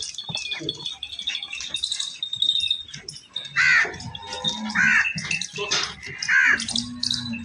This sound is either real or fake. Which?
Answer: real